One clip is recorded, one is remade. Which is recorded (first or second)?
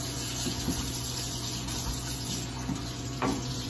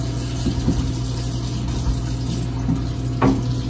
second